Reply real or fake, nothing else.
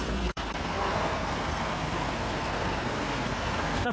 fake